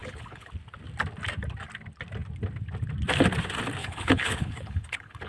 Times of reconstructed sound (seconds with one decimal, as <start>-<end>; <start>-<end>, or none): 0.0-0.5; 3.8-5.3